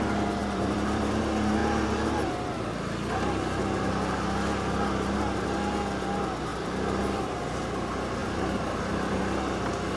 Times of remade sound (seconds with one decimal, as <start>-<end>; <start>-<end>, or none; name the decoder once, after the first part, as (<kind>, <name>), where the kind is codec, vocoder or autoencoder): 0.4-1.2 (vocoder, BigVGAN v2); 6.5-7.6; 8.2-9.2